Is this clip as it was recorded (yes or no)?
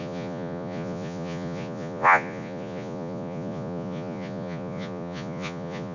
no